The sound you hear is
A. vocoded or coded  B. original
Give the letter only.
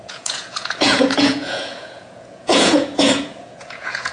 A